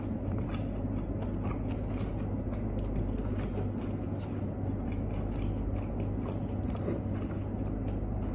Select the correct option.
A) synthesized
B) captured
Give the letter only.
B